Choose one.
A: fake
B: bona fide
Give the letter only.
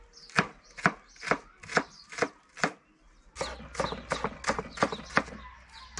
B